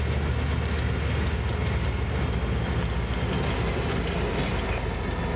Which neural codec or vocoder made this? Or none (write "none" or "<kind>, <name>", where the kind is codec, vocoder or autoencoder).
none